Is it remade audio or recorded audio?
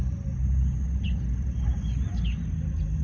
recorded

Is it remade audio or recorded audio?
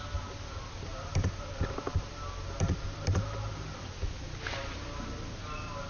recorded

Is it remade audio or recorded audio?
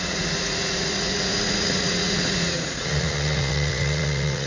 remade